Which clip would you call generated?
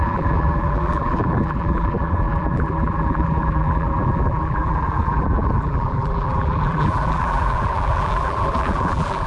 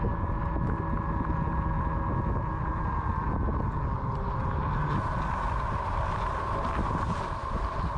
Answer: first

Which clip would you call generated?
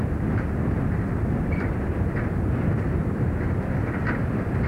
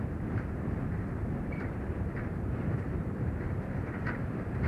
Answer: second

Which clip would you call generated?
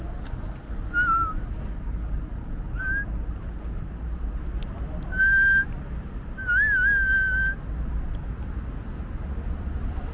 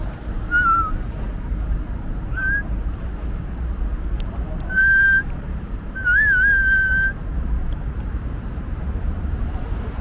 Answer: second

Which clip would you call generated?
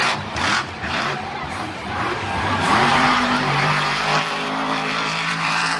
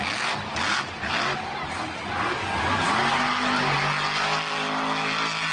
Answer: first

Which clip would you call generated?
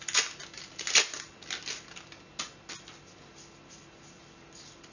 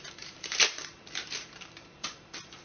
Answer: second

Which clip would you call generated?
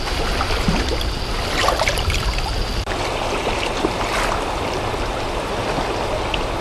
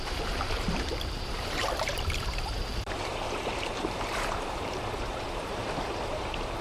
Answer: second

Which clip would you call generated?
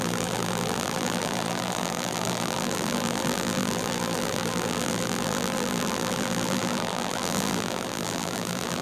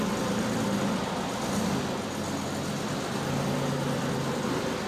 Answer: first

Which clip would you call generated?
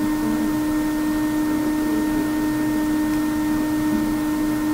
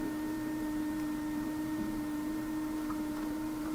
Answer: second